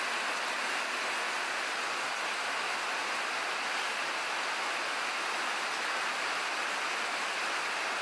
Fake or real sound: real